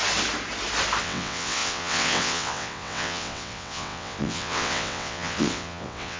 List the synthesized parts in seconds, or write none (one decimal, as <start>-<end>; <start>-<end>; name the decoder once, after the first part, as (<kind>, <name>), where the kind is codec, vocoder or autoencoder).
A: 1.0-6.2 (vocoder, WaveNeXt)